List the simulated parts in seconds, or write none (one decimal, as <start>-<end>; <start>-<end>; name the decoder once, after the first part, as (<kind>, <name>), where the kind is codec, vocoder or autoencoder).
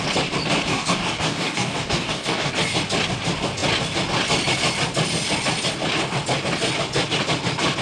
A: 0.7-2.5 (codec, DAC)